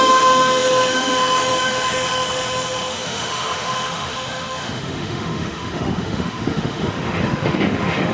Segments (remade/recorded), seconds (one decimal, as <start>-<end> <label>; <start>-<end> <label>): 0.0-8.1 remade